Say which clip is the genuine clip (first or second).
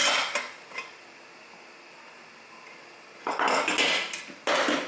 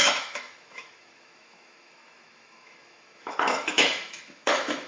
first